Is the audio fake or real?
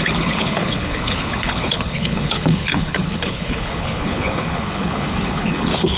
fake